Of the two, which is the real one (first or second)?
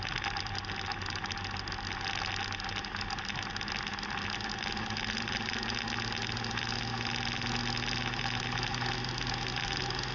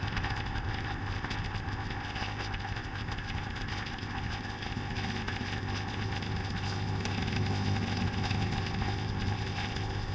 first